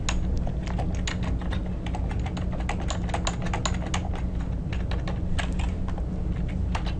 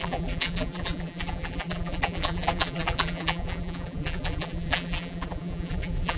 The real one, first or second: first